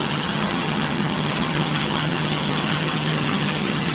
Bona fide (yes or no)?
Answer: no